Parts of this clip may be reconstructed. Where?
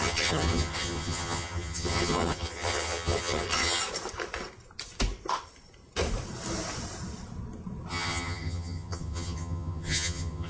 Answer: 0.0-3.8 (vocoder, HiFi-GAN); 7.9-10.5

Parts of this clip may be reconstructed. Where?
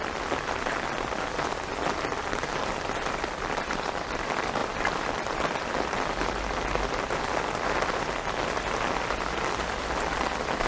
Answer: none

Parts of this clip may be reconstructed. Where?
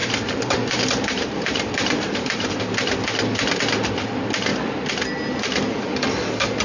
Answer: 0.0-2.6 (vocoder, BigVGAN v2)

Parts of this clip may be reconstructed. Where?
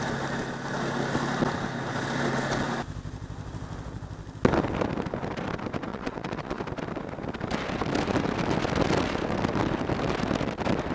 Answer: 5.9-6.6 (vocoder, WaveNeXt)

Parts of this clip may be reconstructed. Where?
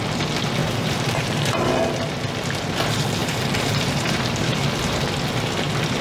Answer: 0.6-1.6 (vocoder, BigVGAN v2); 3.2-4.6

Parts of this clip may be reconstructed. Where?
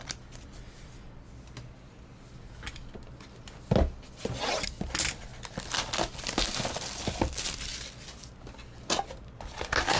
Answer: none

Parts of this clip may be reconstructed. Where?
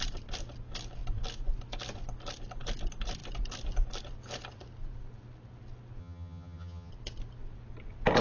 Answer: 6.0-6.9 (vocoder, HiFi-GAN)